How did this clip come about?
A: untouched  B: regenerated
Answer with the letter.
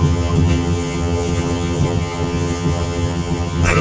B